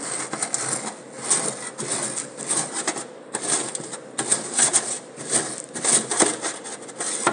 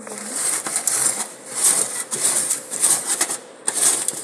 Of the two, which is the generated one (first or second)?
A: second